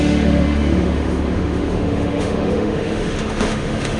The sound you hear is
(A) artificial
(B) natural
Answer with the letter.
A